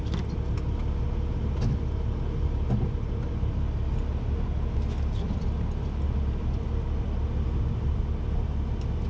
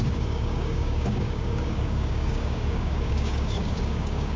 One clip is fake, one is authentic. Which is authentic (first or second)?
first